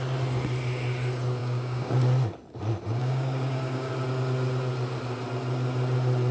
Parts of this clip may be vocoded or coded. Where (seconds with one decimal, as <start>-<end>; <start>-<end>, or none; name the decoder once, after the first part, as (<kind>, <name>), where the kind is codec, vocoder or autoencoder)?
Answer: 1.4-1.9 (codec, DAC); 3.0-3.9